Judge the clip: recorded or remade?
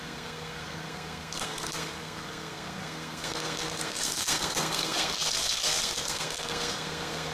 remade